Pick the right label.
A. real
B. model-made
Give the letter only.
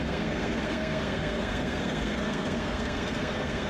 B